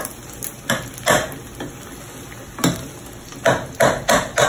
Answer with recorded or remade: recorded